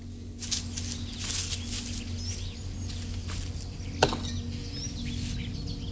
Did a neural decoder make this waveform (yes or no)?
no